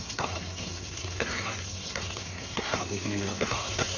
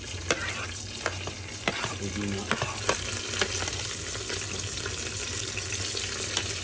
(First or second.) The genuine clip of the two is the second